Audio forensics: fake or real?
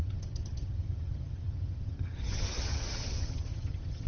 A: fake